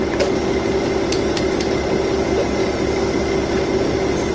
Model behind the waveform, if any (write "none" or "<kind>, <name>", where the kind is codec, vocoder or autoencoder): none